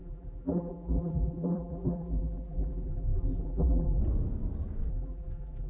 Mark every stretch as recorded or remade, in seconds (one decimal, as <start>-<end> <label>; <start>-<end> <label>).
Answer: 0.0-4.0 remade; 4.0-4.9 recorded; 4.9-5.7 remade